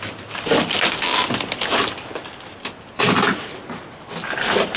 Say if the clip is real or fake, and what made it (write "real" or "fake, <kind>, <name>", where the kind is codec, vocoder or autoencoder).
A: real